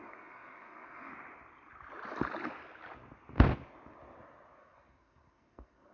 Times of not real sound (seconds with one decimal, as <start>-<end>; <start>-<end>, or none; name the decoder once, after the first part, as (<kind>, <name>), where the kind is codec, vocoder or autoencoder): 0.0-1.1 (codec, SNAC); 4.6-5.9